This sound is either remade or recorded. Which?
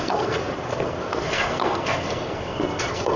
remade